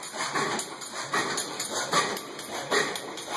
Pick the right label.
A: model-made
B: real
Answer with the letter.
B